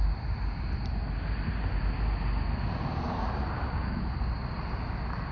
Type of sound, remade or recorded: recorded